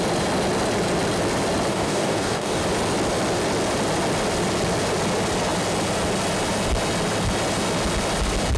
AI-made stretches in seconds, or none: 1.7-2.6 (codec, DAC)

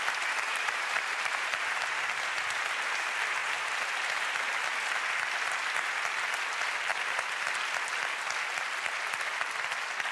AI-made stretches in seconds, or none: 0.5-2.0 (vocoder, BigVGAN v2); 3.4-4.3

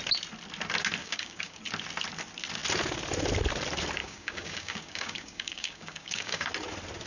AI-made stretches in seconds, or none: 1.0-1.6 (codec, DAC); 4.0-6.5

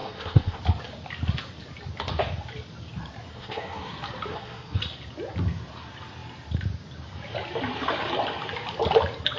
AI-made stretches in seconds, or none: 0.0-0.6 (codec, SNAC); 3.3-3.9; 4.3-4.8

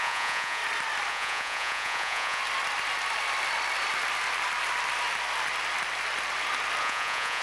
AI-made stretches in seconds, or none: 0.0-0.6 (vocoder, Vocos); 1.1-2.4; 6.8-7.4

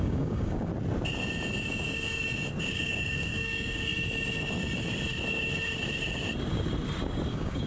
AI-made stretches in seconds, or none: 0.0-0.7 (codec, DAC); 2.6-3.9; 7.3-7.7